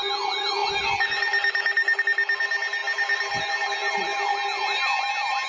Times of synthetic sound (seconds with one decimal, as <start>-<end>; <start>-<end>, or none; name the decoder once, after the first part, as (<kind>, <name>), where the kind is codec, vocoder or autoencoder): none